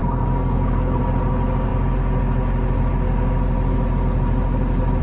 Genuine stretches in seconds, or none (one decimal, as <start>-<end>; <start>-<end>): 1.0-5.0